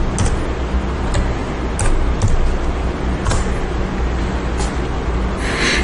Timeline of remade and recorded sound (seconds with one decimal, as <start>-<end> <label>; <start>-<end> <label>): 0.0-5.8 recorded